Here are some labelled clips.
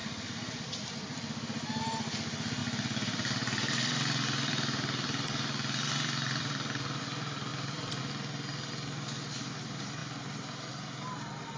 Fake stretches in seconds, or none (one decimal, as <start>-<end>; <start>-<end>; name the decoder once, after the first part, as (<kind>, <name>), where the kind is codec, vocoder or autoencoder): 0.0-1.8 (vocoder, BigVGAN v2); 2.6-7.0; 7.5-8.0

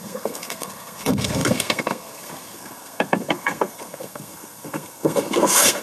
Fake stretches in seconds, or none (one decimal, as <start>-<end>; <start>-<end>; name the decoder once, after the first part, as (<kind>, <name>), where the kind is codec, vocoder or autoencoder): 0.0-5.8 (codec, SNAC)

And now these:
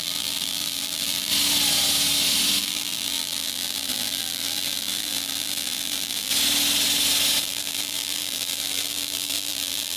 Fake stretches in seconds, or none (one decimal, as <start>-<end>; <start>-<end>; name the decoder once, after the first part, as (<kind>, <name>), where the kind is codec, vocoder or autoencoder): 0.0-1.3 (vocoder, BigVGAN v2); 2.6-6.3; 7.4-10.0

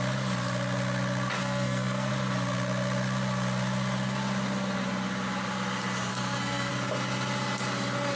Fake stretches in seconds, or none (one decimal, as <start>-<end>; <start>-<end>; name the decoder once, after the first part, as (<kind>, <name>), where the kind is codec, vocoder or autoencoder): 1.4-2.1 (codec, SNAC); 6.1-6.7

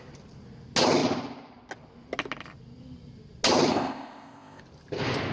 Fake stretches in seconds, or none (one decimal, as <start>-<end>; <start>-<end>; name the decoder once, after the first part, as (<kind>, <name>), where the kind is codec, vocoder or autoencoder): 3.7-4.6 (codec, ZipCodec)

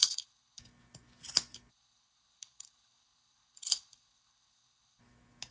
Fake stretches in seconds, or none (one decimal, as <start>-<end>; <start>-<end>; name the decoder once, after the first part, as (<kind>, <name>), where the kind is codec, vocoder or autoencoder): 0.0-0.6 (codec, HILCodec); 1.7-5.0

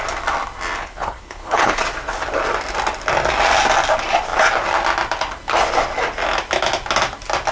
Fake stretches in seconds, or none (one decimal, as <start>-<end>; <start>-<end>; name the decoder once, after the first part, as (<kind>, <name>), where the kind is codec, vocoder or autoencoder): 0.8-1.8 (codec, HILCodec)

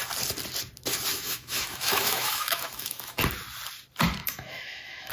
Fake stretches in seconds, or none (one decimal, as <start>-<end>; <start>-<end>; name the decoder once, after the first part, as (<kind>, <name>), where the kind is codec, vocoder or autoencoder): 1.1-3.2 (autoencoder, DAC-VAE); 4.2-5.1